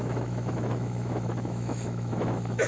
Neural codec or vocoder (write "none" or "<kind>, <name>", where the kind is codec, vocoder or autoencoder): autoencoder, DAC-VAE